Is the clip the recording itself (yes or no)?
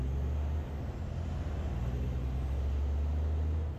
yes